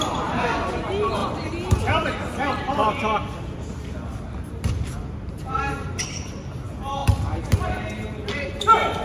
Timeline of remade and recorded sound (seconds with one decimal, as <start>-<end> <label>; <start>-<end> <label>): 0.0-9.0 recorded